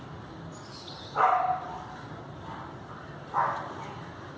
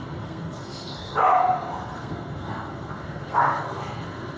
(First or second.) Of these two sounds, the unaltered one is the first